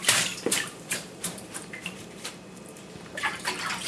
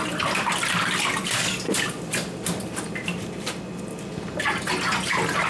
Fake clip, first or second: first